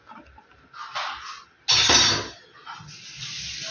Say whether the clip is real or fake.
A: real